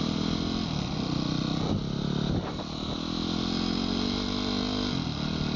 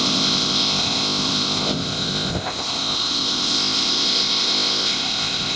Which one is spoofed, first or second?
second